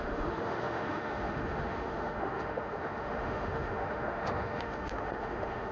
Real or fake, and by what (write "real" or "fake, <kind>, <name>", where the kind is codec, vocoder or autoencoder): fake, autoencoder, DAC-VAE